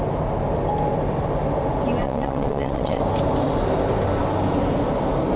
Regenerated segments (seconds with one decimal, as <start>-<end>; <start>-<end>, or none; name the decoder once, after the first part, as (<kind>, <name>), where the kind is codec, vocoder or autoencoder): 2.0-3.0 (vocoder, WaveNeXt)